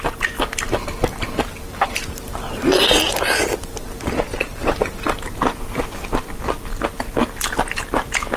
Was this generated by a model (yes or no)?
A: no